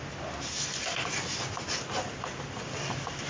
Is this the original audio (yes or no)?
yes